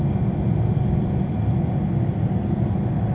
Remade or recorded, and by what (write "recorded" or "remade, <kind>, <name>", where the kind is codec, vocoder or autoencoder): recorded